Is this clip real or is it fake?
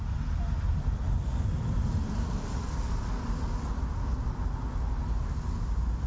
real